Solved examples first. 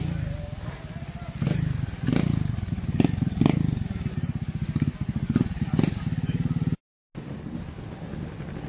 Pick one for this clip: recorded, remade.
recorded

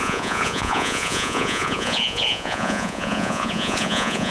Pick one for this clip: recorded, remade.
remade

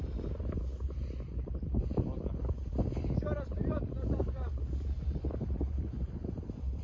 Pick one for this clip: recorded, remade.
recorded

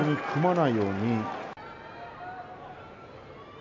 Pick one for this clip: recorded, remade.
recorded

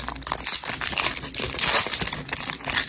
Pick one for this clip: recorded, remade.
recorded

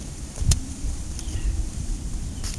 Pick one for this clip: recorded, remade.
remade